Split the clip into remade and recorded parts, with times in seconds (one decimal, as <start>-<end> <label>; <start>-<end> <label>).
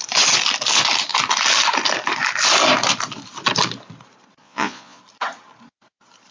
0.0-4.4 recorded; 4.4-5.0 remade; 5.0-6.3 recorded